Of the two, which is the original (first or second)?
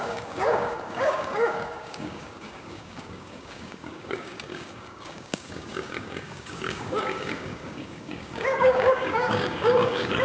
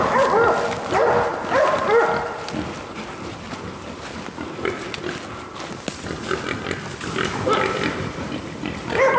second